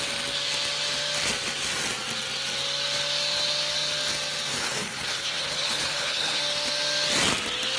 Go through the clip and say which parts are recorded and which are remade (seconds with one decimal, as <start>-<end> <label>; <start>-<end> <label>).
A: 0.0-4.5 recorded; 4.5-6.4 remade; 6.4-7.8 recorded